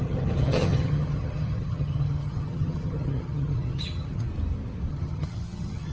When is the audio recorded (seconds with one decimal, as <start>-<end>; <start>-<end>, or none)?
4.3-4.9